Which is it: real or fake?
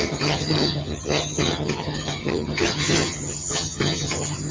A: fake